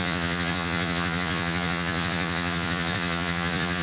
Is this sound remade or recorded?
remade